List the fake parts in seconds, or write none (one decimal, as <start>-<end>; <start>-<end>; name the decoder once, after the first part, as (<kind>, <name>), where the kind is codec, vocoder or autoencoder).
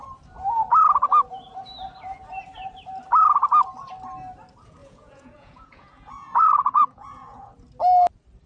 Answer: 4.8-7.5 (vocoder, Vocos)